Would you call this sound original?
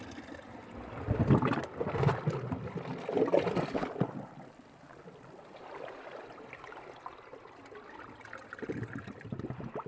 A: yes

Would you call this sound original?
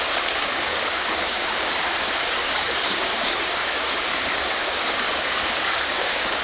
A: no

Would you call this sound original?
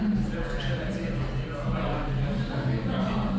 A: yes